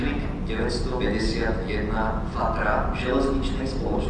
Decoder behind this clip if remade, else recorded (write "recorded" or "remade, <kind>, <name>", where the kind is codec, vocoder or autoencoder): recorded